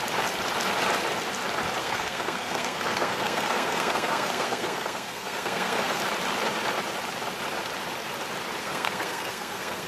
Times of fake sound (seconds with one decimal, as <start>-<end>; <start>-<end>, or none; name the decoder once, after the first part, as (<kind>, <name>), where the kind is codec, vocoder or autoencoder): 1.8-6.0 (codec, SNAC); 8.6-9.9